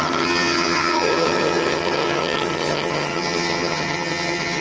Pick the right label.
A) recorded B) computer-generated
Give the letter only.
B